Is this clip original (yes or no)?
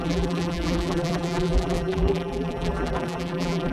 no